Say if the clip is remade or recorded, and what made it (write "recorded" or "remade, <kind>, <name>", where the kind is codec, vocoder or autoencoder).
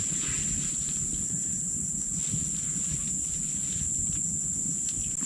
recorded